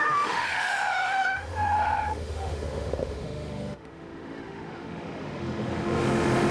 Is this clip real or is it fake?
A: fake